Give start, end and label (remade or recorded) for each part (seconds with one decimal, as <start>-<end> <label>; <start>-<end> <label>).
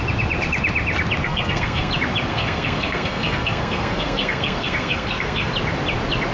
0.0-1.2 recorded; 1.2-1.9 remade; 1.9-2.3 recorded; 2.3-5.5 remade; 5.5-6.3 recorded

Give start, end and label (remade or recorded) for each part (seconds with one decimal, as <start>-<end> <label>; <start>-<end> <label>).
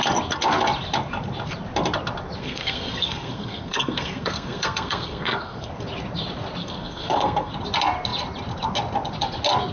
0.0-2.4 recorded; 2.4-5.7 remade; 5.7-6.6 recorded; 6.6-7.5 remade; 7.5-9.7 recorded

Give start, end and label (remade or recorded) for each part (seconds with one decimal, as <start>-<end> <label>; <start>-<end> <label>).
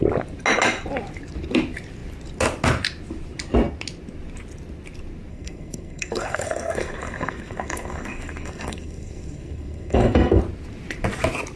0.0-5.3 recorded; 5.3-10.4 remade; 10.4-11.6 recorded